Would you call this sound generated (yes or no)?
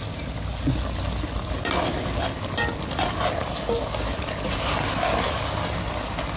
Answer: no